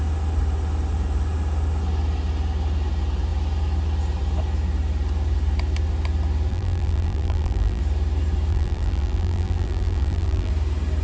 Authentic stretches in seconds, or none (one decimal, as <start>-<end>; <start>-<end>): 0.0-6.5; 7.8-8.5; 10.5-11.0